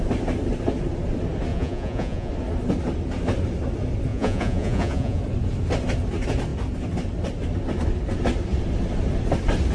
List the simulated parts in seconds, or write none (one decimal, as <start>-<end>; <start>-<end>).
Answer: 1.5-2.3; 4.1-5.2